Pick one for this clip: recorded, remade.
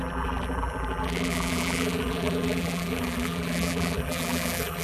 remade